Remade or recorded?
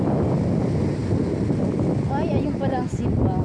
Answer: recorded